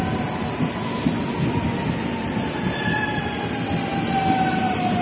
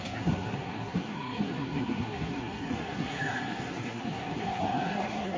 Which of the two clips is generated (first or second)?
second